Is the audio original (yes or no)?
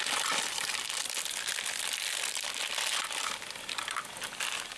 yes